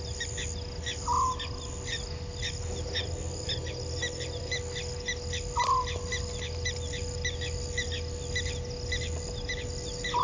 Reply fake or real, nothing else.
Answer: real